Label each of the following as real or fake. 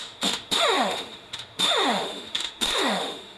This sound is fake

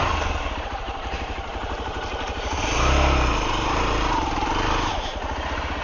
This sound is fake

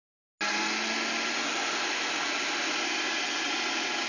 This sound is real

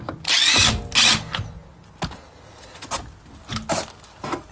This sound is real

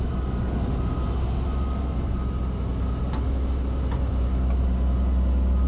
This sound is real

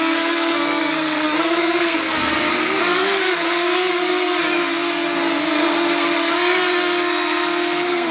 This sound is fake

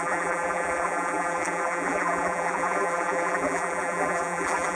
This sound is fake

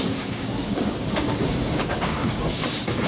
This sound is fake